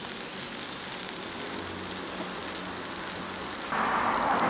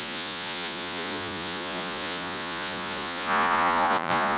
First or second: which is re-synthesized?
second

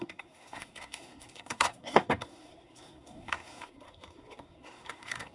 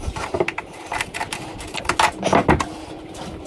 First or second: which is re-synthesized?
first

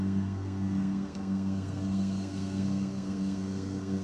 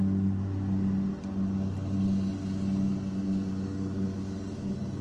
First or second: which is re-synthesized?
first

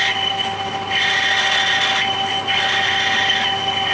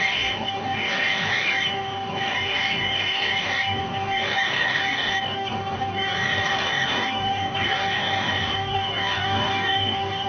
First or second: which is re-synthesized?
second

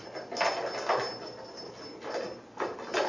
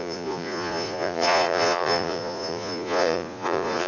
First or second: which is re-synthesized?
second